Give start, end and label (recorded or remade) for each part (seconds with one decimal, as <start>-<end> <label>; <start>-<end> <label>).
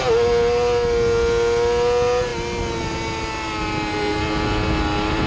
0.0-5.3 recorded